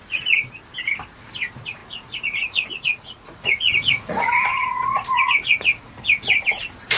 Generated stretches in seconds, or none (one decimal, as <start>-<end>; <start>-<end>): 1.8-6.0